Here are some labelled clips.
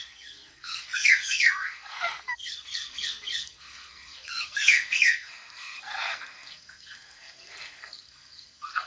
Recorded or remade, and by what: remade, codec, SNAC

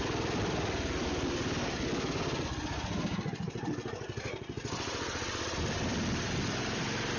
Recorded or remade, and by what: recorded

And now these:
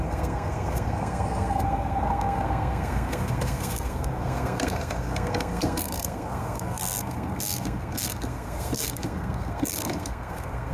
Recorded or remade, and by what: remade, codec, SNAC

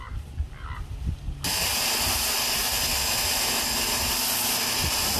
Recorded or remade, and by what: recorded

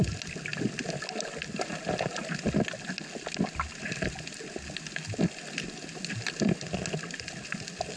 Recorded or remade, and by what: recorded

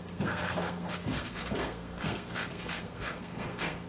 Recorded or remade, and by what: remade, codec, SNAC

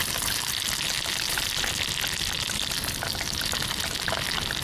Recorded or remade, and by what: recorded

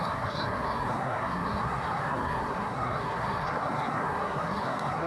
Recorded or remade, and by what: remade, codec, SNAC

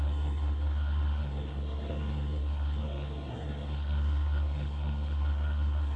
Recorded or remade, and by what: remade, codec, SNAC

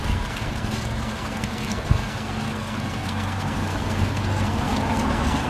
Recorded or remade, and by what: remade, codec, SNAC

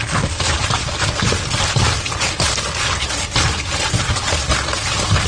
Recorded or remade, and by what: recorded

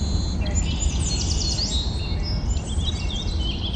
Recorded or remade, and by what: recorded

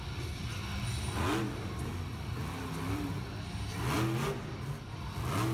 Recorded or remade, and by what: recorded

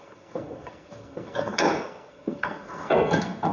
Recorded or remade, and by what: remade, codec, SNAC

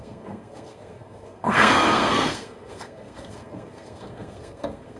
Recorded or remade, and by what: remade, codec, SNAC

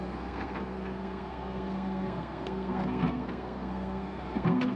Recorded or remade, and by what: remade, codec, SNAC